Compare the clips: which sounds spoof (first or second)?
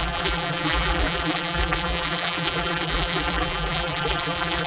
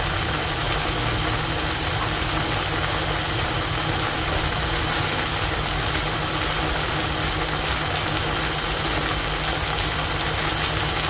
first